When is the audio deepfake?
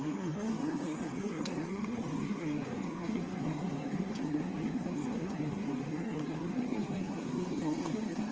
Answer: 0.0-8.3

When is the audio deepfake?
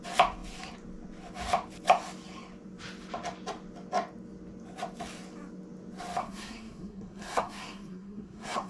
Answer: 6.2-8.7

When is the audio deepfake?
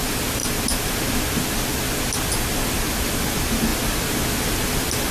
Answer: none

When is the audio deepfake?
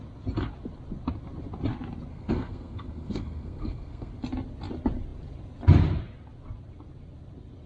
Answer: 2.1-4.1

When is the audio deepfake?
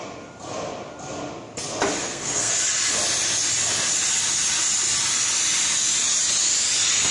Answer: 2.0-2.5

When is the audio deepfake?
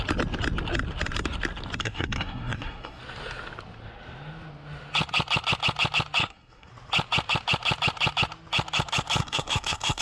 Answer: 1.8-3.0; 6.2-6.7; 9.2-10.0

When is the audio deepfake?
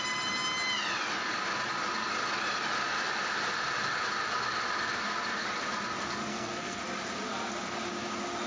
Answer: 6.3-6.8